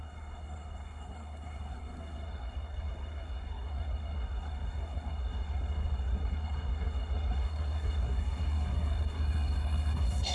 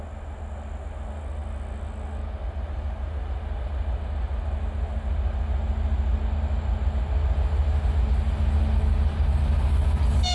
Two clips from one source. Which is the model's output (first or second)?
first